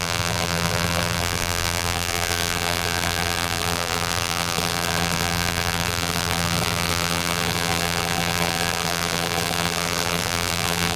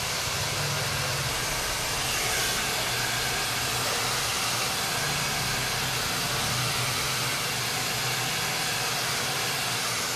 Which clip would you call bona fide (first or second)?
second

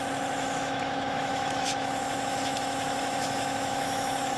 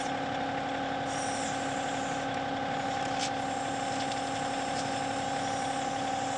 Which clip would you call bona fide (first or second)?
second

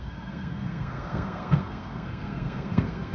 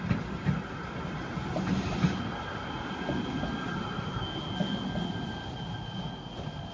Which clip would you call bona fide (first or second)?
second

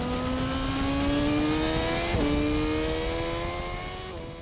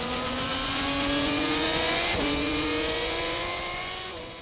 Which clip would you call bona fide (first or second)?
first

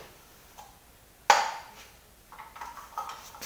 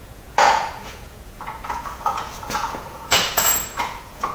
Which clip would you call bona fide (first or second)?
first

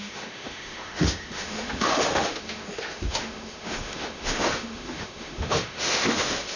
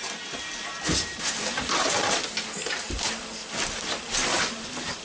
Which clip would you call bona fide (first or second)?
second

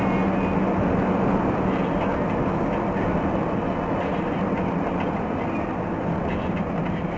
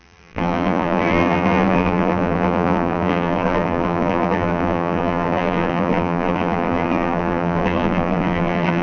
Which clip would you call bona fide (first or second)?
first